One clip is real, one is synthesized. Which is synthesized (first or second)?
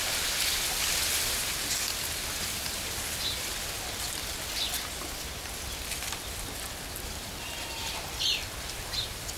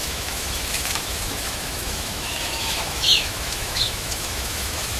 second